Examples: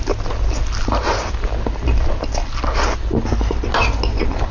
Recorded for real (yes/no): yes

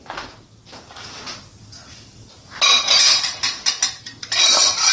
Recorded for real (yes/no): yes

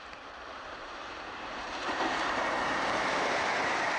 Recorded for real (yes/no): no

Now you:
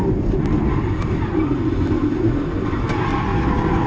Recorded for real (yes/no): yes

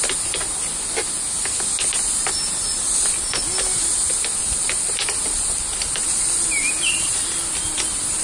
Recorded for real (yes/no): yes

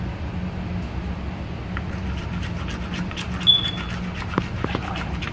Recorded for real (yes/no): yes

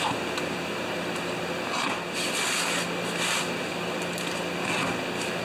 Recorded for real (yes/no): yes